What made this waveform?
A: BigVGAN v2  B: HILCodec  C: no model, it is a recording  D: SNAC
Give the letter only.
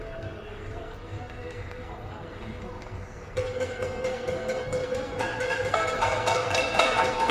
D